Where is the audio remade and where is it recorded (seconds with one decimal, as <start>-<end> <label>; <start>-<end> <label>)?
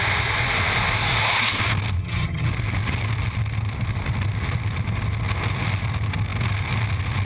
0.0-2.0 recorded; 2.0-2.5 remade; 2.5-7.2 recorded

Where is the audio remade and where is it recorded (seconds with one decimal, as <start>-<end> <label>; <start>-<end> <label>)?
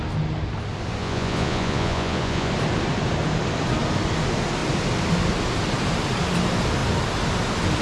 0.0-1.0 recorded; 1.0-2.5 remade; 2.5-7.8 recorded